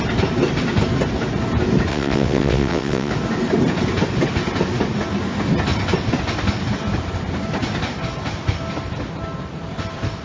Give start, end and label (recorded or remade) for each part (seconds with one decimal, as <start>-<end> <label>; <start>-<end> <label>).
0.0-1.9 recorded; 1.9-3.1 remade; 3.1-10.2 recorded